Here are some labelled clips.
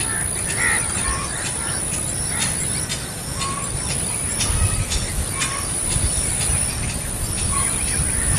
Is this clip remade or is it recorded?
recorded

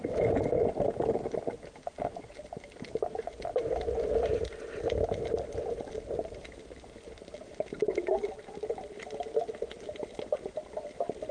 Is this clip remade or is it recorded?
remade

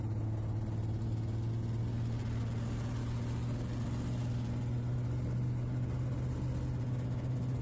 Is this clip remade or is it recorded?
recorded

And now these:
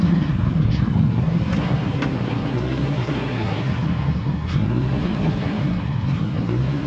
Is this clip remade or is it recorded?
remade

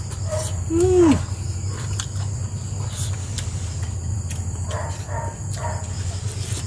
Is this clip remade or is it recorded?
recorded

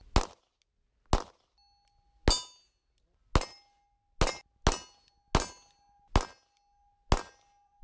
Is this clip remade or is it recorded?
recorded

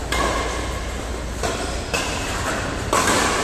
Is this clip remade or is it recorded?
recorded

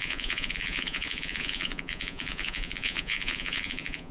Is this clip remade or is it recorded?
remade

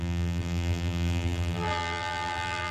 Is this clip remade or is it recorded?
remade